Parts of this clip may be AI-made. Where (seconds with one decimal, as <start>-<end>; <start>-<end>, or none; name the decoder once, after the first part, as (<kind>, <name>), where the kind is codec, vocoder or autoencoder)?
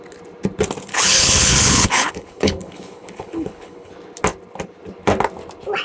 0.9-3.9 (codec, HILCodec)